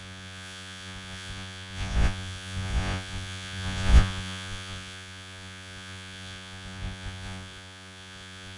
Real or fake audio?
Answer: fake